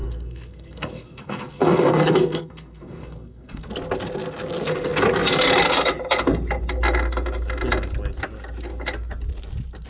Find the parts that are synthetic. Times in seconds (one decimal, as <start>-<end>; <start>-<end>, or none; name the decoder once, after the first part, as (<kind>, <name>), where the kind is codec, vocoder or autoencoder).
0.0-3.7 (codec, SNAC)